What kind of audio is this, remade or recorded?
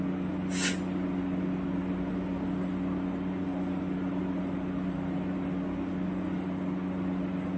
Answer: recorded